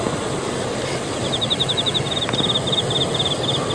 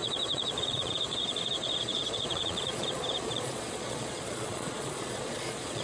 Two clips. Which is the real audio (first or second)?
first